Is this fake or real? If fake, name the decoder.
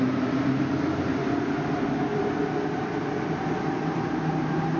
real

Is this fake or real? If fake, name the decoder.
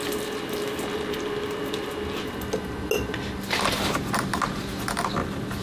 real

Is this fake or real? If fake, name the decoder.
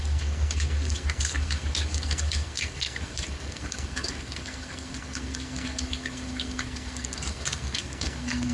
fake, codec, SNAC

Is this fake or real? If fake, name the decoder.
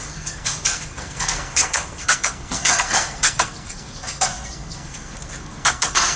fake, codec, SNAC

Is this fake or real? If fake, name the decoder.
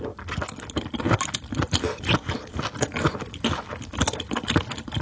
real